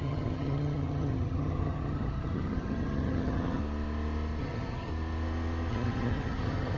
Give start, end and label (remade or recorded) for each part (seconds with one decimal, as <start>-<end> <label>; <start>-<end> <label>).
0.0-3.6 remade; 3.6-4.4 recorded; 4.4-4.9 remade; 4.9-5.7 recorded; 5.7-6.8 remade